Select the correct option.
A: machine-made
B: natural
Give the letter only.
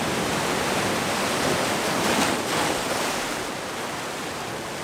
B